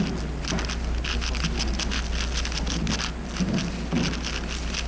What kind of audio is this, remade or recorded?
recorded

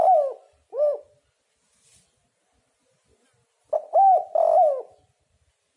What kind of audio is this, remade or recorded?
recorded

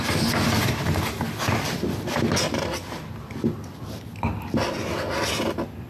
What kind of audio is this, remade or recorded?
recorded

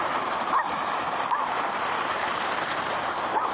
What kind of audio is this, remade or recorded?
remade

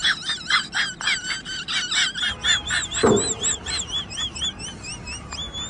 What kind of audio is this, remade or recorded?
recorded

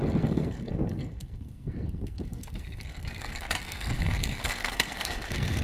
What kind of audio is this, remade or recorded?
remade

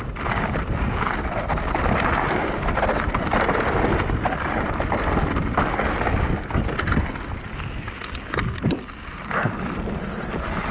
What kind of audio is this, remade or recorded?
recorded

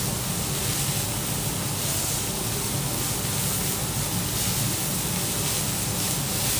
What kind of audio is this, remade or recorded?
recorded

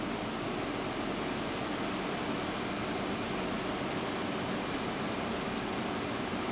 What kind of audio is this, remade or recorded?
recorded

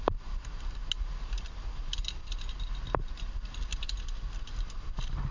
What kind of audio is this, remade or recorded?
recorded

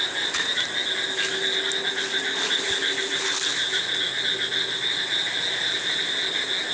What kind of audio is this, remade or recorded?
recorded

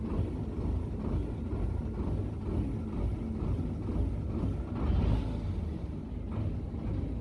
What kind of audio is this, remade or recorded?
recorded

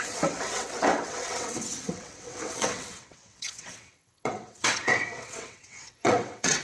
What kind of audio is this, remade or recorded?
remade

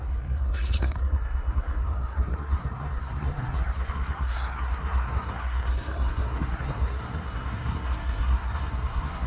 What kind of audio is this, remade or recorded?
remade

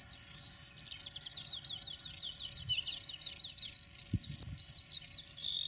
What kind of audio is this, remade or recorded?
recorded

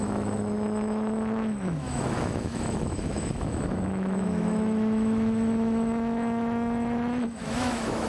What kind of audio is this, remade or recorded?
remade